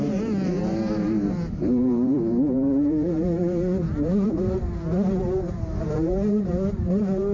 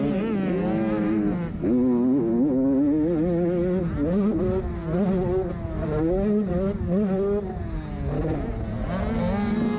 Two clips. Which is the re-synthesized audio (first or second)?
first